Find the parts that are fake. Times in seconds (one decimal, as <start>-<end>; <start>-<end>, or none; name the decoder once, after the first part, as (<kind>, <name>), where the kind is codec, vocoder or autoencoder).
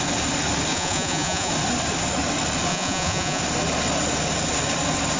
0.7-1.5 (vocoder, Vocos); 2.7-3.4